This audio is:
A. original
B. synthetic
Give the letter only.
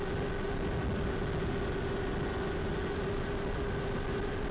A